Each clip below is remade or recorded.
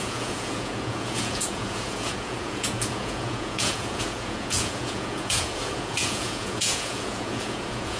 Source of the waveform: remade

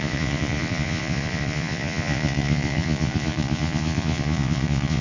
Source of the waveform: remade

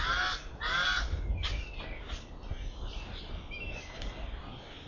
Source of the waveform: recorded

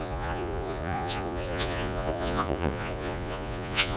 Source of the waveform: remade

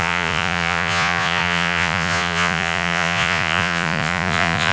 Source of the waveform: remade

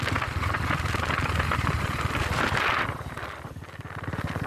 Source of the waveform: recorded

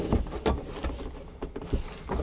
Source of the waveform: recorded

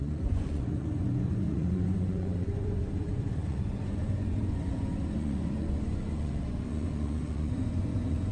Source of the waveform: remade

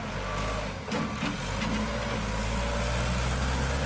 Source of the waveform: recorded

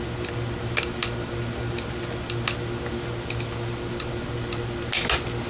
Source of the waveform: recorded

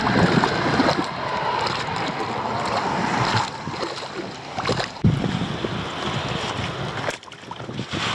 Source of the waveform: recorded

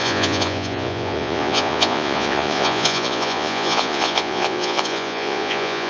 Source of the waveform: remade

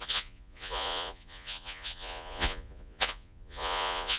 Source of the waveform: remade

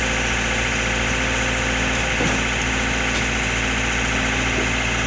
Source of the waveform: recorded